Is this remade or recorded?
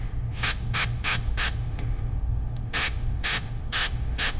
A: remade